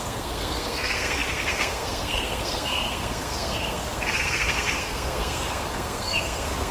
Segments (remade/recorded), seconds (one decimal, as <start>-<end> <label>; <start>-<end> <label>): 0.0-6.7 remade